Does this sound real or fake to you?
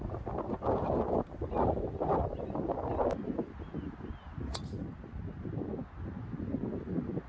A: real